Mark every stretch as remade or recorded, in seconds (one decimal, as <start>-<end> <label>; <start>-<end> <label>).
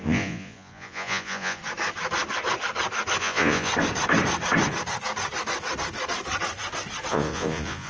0.0-1.6 remade; 1.6-3.2 recorded; 3.2-3.7 remade; 3.7-7.1 recorded; 7.1-7.9 remade